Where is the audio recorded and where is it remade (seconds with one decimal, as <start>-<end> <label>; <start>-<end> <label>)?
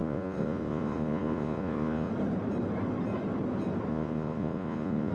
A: 0.0-2.1 remade; 2.1-3.9 recorded; 3.9-5.1 remade